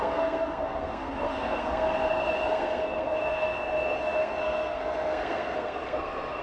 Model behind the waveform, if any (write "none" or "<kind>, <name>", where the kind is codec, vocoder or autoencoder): codec, SNAC